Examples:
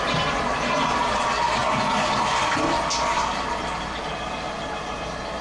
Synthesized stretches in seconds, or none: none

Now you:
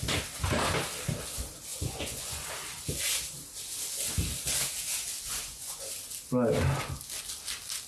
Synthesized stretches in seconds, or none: 1.7-2.5; 5.3-5.9

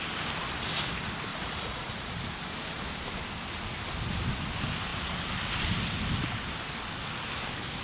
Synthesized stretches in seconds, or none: 1.3-2.1